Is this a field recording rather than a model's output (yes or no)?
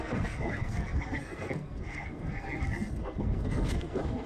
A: no